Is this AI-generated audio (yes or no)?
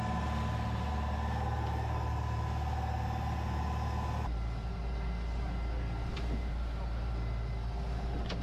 no